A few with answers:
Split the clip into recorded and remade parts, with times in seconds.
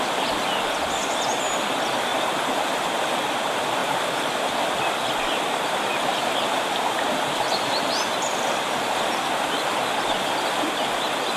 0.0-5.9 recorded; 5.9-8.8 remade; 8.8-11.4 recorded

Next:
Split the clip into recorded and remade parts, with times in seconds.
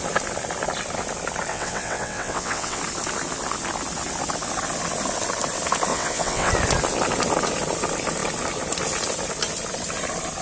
0.0-1.5 recorded; 1.5-2.8 remade; 2.8-5.9 recorded; 5.9-6.5 remade; 6.5-10.4 recorded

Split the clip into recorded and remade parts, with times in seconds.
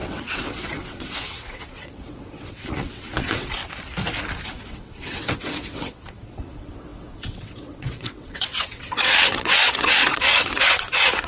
0.0-3.6 remade; 3.6-4.4 recorded; 4.4-11.3 remade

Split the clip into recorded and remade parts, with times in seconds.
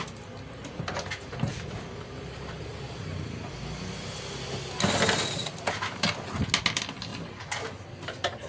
0.0-8.5 recorded